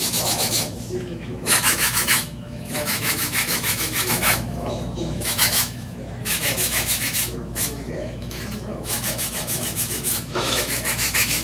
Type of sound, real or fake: fake